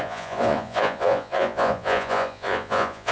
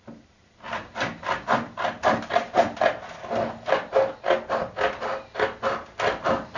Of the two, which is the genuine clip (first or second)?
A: second